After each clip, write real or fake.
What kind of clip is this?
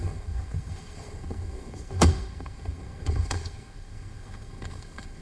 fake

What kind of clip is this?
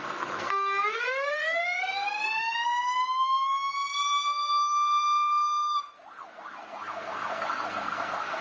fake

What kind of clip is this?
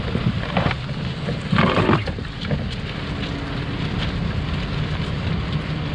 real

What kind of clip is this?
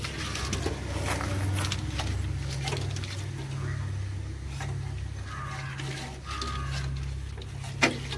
real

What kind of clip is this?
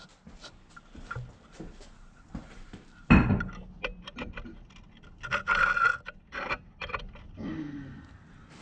real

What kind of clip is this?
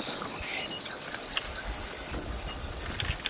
real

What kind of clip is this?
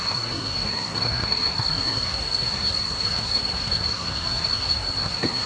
fake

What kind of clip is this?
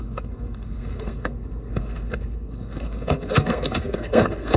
fake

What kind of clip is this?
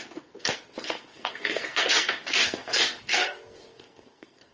fake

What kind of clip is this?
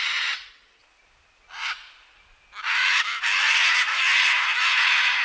real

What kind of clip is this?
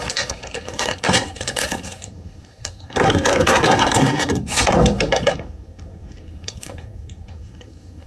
fake